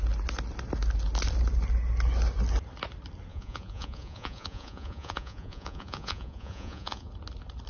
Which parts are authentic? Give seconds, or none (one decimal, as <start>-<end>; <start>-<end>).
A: 0.0-3.3; 7.1-7.7